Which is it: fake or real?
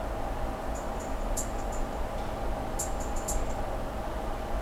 real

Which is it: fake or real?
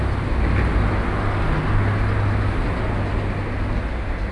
real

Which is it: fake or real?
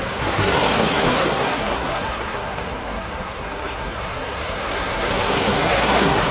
fake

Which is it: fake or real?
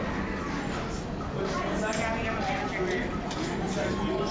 real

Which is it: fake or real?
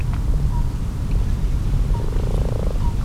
real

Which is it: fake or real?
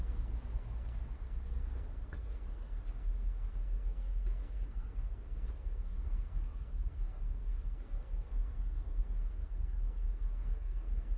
fake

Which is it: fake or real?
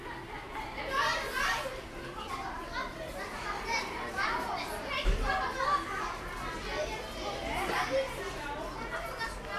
real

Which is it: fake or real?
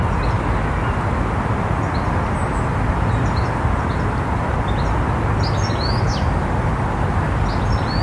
real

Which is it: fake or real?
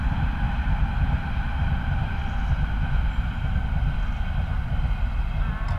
real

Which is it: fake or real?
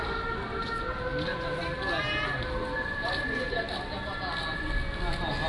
real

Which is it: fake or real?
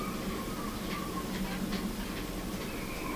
real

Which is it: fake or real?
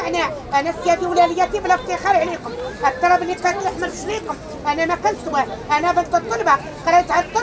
real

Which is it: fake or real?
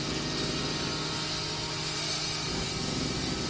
real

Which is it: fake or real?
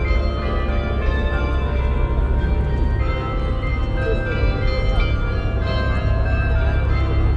real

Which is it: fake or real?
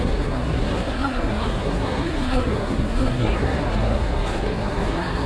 fake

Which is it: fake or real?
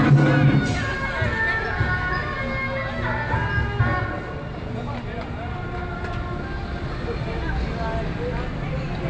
real